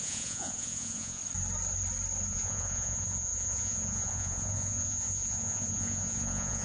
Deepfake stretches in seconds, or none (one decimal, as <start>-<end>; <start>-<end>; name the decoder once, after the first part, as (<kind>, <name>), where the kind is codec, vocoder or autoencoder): 0.0-1.2 (vocoder, Vocos); 2.3-6.6